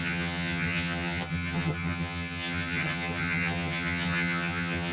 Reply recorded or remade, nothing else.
remade